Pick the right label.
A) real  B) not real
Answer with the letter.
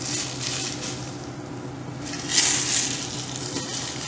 A